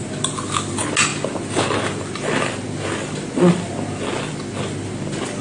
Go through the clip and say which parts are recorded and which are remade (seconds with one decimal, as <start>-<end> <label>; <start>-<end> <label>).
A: 0.0-5.4 recorded